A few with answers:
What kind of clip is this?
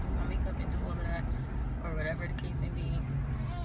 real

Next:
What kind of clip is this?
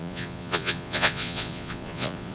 fake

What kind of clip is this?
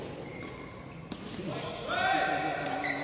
real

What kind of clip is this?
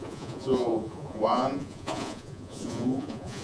fake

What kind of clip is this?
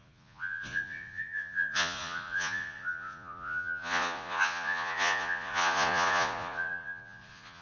fake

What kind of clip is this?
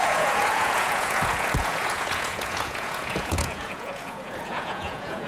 fake